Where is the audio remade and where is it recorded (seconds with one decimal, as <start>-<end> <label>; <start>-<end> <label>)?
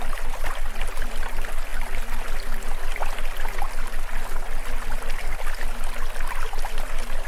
0.0-7.3 recorded